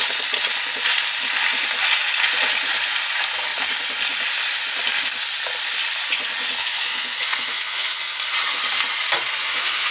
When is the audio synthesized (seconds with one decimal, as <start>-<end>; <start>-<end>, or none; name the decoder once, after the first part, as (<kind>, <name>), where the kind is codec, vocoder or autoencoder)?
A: 6.6-8.2 (vocoder, Vocos); 9.4-9.9